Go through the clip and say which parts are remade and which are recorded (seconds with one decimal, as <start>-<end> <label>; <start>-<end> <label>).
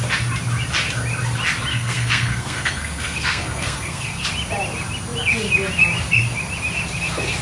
0.0-1.7 recorded; 1.7-4.3 remade; 4.3-7.4 recorded